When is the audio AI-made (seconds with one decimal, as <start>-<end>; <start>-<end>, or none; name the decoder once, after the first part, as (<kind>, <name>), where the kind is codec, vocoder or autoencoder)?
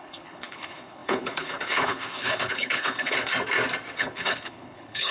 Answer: 0.0-3.3 (codec, HILCodec); 4.0-5.1